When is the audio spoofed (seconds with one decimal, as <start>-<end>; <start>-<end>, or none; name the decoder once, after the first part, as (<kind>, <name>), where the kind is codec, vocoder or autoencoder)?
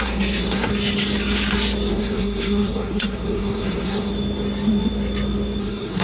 0.0-0.7 (codec, SNAC); 1.9-4.1; 5.6-6.0